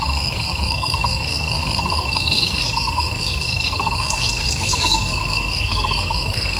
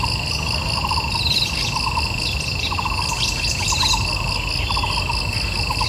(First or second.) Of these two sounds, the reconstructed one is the first